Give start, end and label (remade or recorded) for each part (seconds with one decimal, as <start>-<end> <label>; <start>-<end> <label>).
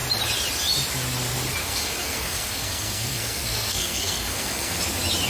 0.0-1.6 recorded; 1.6-4.8 remade; 4.8-5.3 recorded